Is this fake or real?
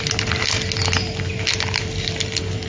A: real